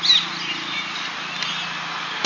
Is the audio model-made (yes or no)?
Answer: no